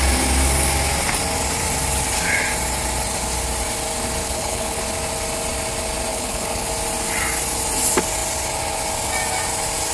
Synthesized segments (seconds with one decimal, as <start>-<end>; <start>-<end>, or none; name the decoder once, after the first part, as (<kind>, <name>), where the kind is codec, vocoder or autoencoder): 4.2-4.8 (codec, HILCodec); 6.1-6.7